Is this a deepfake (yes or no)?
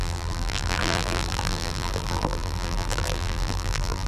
yes